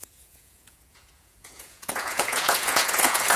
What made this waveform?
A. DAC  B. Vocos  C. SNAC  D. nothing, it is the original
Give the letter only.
B